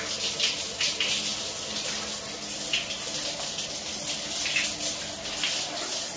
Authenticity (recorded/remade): recorded